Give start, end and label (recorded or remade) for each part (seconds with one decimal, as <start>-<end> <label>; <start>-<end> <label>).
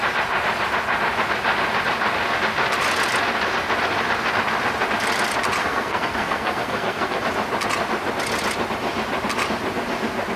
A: 0.0-5.6 recorded; 5.6-7.2 remade; 7.2-10.4 recorded